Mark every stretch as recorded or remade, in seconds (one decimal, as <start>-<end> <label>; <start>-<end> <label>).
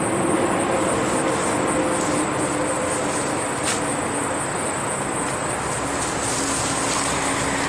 0.0-7.7 recorded